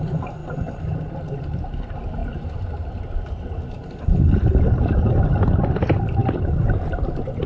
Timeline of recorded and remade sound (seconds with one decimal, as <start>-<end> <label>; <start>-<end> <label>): 0.0-7.5 recorded